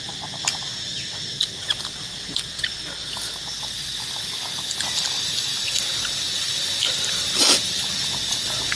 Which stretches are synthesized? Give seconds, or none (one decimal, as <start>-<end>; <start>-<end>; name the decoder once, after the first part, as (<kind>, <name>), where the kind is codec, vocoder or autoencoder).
none